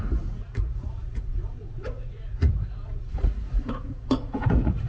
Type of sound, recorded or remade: remade